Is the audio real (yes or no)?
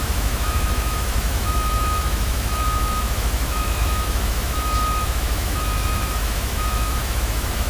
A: no